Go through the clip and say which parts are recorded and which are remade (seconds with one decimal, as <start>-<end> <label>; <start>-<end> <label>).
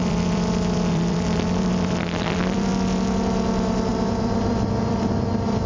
0.0-2.7 remade; 2.7-3.9 recorded; 3.9-5.7 remade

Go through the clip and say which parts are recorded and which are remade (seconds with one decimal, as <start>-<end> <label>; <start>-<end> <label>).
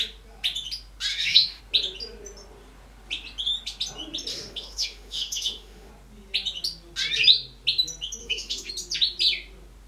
0.0-1.1 recorded; 1.1-1.6 remade; 1.6-4.3 recorded; 4.3-5.9 remade; 5.9-8.2 recorded; 8.2-8.7 remade; 8.7-9.9 recorded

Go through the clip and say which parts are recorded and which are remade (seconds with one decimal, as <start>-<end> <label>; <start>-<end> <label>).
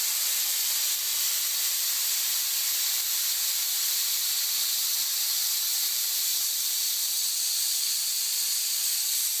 0.0-1.1 recorded; 1.1-4.9 remade; 4.9-6.3 recorded; 6.3-6.9 remade; 6.9-9.4 recorded